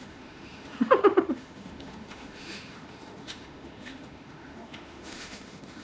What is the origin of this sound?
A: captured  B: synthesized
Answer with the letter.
B